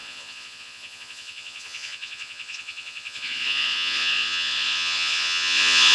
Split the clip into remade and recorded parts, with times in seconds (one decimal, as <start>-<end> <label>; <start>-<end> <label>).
0.0-5.9 remade